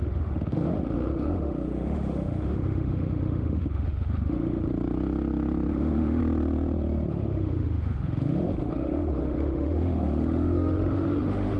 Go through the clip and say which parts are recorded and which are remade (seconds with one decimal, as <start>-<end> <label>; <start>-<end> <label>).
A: 0.0-4.7 remade; 4.7-5.7 recorded; 5.7-6.2 remade; 6.2-7.1 recorded; 7.1-11.6 remade